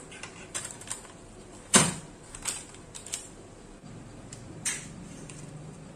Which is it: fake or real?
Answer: fake